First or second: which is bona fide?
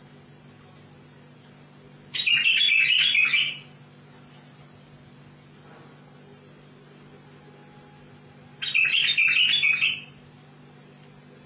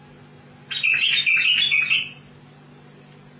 second